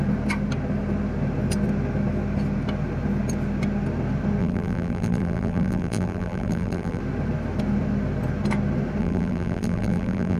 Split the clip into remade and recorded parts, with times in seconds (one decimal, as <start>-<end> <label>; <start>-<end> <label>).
0.0-4.4 recorded; 4.4-7.0 remade; 7.0-9.0 recorded; 9.0-10.4 remade